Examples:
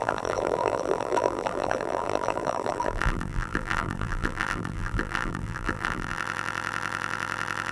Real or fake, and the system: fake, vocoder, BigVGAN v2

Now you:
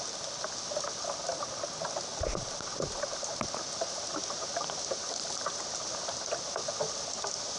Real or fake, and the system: real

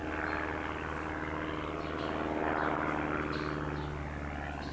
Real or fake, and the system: real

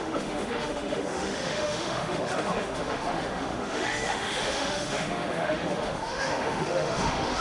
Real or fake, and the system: fake, autoencoder, DAC-VAE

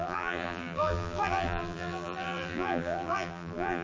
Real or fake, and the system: fake, vocoder, BigVGAN v2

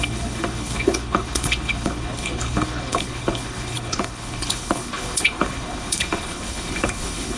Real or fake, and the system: fake, codec, HILCodec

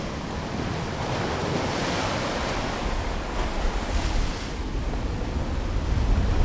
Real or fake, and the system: real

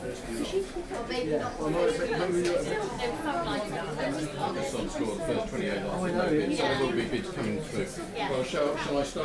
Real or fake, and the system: real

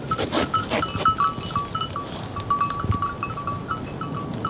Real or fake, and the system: real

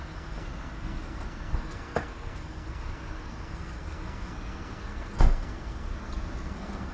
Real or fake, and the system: fake, codec, SNAC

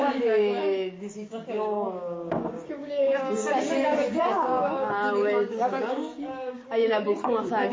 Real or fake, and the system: fake, codec, DAC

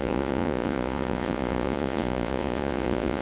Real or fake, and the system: fake, vocoder, Vocos